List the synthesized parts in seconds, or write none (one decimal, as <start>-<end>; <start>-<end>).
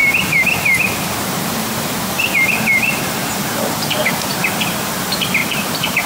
2.7-4.5; 5.4-6.1